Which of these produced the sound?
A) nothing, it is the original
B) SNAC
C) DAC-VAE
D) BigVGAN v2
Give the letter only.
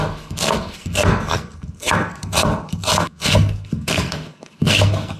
B